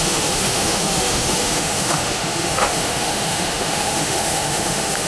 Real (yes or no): no